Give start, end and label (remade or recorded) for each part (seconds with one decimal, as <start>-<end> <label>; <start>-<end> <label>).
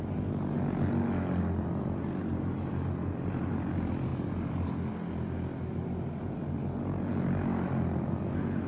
0.0-8.7 recorded